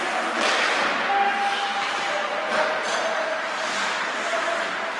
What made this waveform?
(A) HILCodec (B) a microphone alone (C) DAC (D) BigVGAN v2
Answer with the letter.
B